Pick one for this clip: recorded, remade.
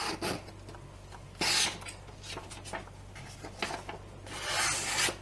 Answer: recorded